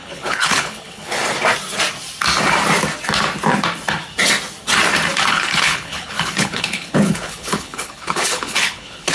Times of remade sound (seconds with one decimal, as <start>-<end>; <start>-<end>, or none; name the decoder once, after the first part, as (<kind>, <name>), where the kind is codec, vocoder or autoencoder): 0.0-1.2 (codec, HILCodec); 5.3-9.1